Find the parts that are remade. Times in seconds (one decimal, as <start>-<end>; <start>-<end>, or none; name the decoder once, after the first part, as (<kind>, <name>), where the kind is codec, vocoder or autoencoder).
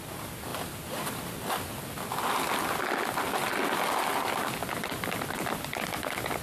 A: none